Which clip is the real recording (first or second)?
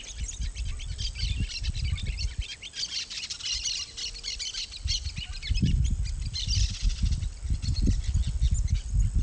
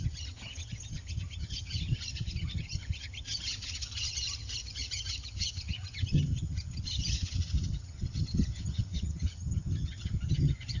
first